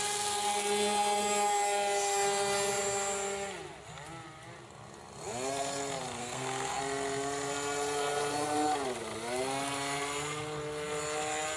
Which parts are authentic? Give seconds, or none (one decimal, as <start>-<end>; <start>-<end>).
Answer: 0.0-6.2; 6.8-11.6